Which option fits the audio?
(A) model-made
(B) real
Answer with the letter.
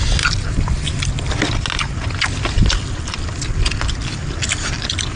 B